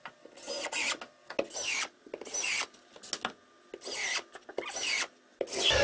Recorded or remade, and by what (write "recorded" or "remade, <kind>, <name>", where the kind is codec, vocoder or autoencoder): recorded